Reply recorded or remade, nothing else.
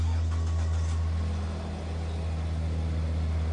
recorded